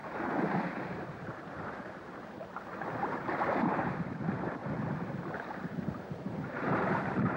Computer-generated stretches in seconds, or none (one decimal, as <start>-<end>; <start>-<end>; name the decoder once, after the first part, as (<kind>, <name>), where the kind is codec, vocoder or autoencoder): 0.6-2.4 (vocoder, BigVGAN v2); 3.0-4.6; 6.1-7.4